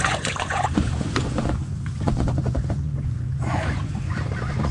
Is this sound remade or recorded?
remade